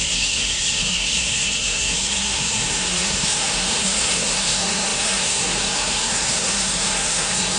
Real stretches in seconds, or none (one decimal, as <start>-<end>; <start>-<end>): none